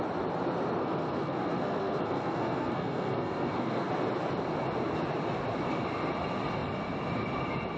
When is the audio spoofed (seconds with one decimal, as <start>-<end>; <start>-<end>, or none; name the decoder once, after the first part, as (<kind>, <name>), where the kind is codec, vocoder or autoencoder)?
0.8-3.9 (codec, SNAC)